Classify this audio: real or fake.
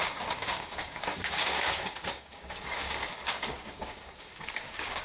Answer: fake